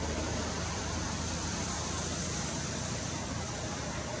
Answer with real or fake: real